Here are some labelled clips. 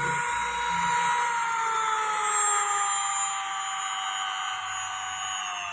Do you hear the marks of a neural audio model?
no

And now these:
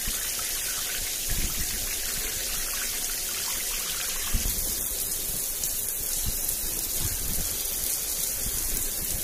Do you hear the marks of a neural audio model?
no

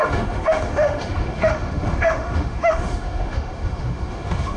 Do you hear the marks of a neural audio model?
yes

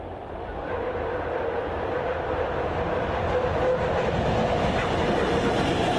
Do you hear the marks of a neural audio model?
no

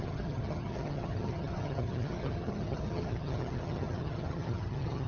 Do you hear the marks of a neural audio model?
yes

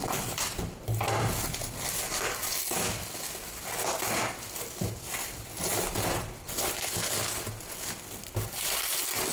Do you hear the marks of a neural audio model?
no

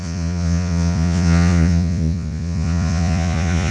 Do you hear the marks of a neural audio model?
yes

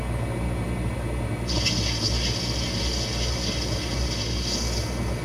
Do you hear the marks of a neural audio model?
no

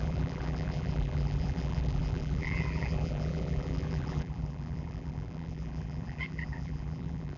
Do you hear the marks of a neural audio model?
yes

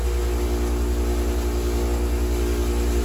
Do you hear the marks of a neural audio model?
no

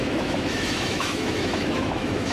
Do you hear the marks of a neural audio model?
yes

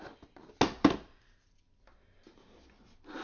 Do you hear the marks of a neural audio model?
no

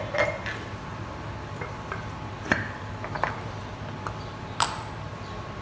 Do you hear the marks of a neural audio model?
no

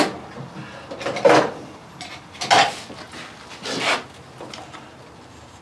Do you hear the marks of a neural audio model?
no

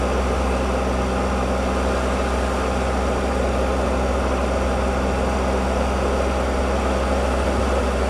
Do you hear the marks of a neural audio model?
no